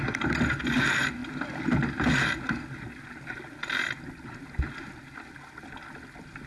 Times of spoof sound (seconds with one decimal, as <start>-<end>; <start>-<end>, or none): none